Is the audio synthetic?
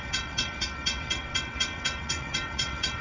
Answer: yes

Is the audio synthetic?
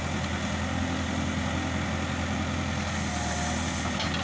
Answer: no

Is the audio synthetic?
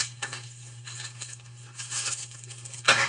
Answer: yes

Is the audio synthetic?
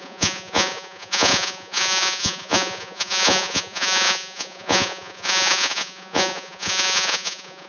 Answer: yes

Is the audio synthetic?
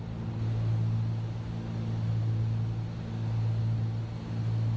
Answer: no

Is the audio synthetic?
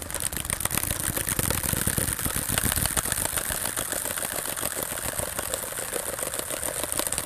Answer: no